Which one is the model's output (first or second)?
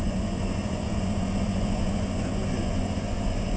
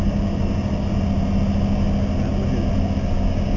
first